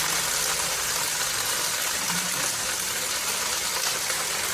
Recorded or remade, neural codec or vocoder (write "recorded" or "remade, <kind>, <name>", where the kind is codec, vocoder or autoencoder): recorded